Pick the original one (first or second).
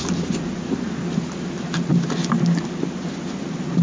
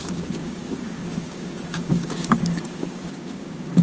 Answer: first